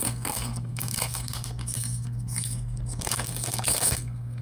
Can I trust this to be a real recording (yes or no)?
no